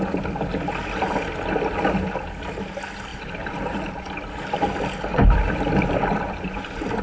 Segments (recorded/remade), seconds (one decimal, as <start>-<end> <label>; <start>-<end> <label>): 0.0-3.1 recorded; 3.1-4.1 remade; 4.1-5.1 recorded; 5.1-7.0 remade